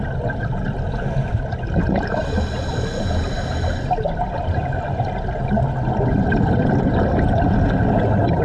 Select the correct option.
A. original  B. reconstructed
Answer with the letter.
A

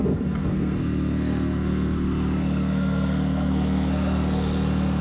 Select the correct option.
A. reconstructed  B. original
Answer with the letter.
A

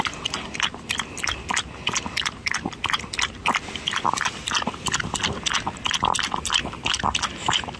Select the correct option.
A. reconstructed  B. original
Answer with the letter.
B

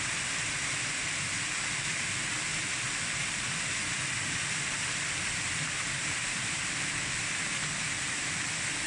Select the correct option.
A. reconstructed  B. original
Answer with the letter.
B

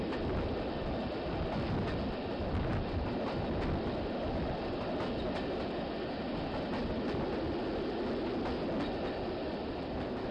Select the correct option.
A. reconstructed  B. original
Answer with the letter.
B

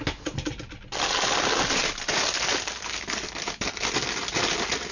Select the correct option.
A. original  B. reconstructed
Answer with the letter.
A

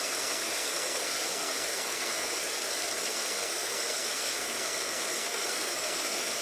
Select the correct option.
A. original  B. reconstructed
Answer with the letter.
B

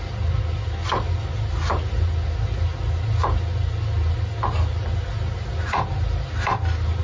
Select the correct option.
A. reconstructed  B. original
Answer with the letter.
B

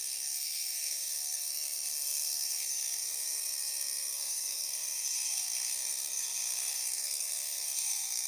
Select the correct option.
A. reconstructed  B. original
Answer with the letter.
A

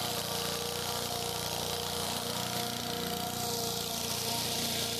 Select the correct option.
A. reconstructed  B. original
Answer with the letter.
B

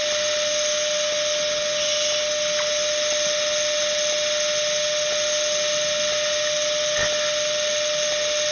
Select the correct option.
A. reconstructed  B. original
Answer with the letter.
B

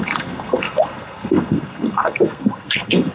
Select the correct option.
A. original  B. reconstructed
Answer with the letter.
B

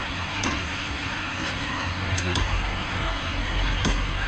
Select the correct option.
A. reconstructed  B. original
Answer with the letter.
A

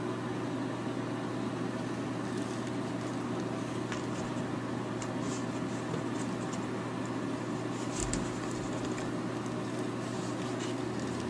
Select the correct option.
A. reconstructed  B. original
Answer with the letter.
B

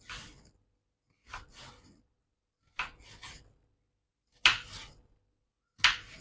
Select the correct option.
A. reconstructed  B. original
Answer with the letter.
B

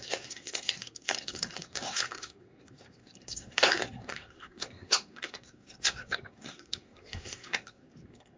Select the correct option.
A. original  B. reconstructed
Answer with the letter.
B